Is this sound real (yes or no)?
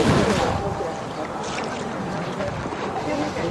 yes